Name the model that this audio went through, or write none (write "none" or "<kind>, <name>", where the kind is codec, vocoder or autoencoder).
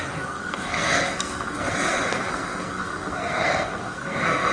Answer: codec, SNAC